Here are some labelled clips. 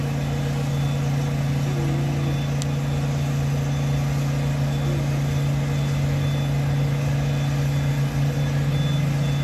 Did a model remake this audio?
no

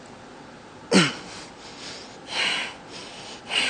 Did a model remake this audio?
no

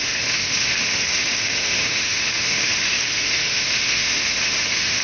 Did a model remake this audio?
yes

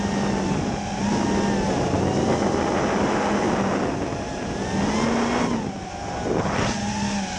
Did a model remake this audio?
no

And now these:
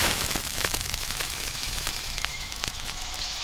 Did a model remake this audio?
yes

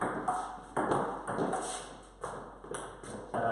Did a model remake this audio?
no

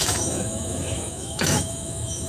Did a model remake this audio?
yes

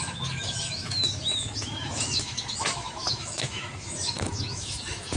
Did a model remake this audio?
yes